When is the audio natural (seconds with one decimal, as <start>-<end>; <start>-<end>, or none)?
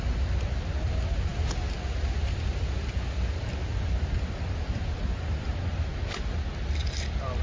0.0-7.4